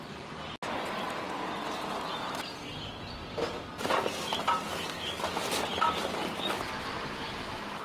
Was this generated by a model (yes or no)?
no